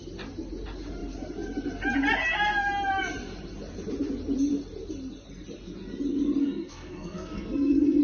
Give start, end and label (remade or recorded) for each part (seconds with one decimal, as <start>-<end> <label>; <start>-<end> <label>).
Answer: 0.0-6.4 recorded; 6.4-8.0 remade